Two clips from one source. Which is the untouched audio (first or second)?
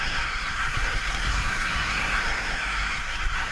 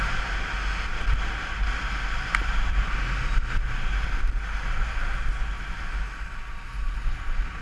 second